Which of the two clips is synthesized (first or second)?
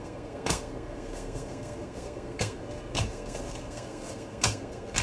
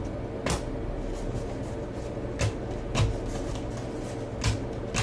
first